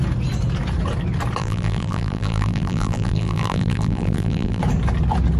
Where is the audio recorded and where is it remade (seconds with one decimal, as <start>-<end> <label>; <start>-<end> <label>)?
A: 0.0-1.4 recorded; 1.4-4.6 remade; 4.6-5.4 recorded